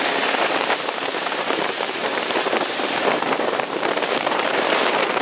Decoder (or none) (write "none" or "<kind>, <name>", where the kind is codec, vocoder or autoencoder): vocoder, BigVGAN v2